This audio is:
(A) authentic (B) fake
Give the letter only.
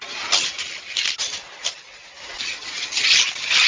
A